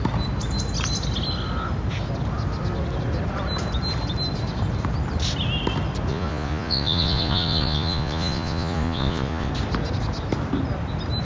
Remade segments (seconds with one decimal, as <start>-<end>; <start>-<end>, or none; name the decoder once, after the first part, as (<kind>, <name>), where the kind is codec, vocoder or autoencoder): 6.1-9.5 (vocoder, Vocos)